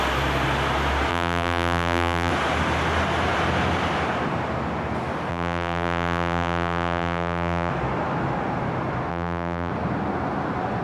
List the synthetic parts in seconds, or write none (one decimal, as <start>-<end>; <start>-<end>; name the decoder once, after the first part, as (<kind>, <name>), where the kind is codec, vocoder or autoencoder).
1.1-2.3 (vocoder, BigVGAN v2); 5.3-7.7; 9.1-9.7